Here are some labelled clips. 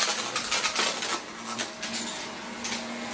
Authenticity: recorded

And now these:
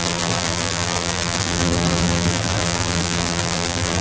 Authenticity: remade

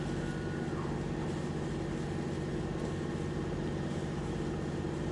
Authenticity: recorded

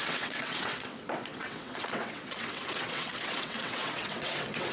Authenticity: remade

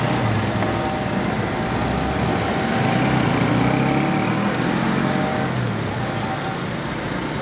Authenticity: recorded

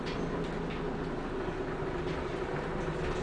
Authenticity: recorded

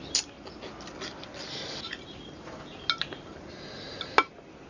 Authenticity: recorded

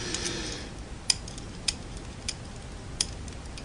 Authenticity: recorded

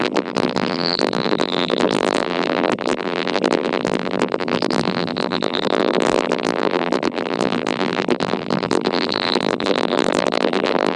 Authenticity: remade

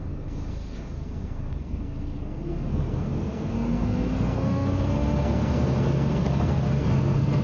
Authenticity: remade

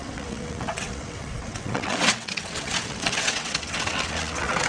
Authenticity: remade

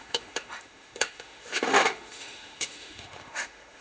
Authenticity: remade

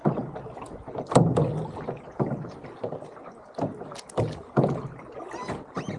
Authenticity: recorded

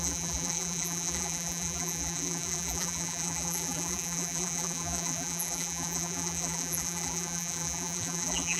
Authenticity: remade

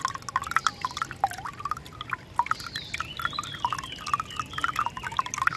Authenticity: recorded